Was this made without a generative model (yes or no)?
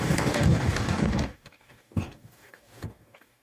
no